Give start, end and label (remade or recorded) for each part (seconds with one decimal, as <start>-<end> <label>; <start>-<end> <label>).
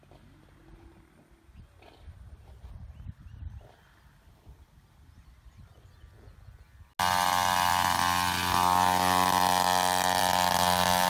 0.0-11.1 recorded